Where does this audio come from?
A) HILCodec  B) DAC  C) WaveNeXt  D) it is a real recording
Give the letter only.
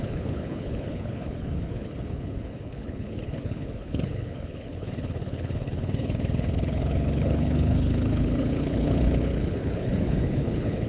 A